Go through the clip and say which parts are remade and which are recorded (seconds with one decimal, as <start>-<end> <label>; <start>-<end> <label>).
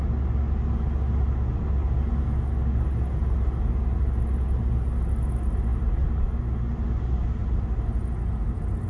0.0-8.9 recorded